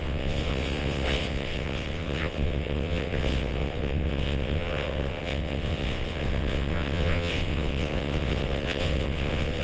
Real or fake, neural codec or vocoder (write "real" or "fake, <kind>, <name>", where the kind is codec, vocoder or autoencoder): fake, vocoder, WaveNeXt